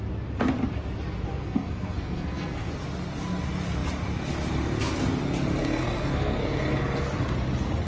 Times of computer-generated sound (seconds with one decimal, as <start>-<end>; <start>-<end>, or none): 1.4-2.7; 5.6-6.6